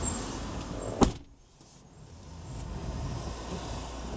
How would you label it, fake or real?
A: real